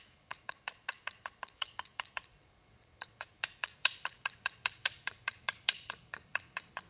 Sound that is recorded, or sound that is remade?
remade